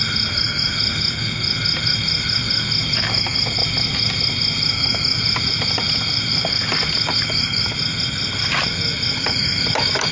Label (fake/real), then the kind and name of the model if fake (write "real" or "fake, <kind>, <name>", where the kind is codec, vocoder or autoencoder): real